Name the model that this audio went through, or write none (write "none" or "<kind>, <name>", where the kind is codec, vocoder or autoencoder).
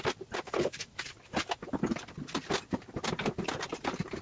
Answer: none